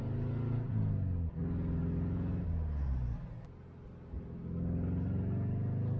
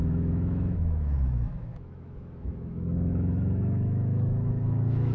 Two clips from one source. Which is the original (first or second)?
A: first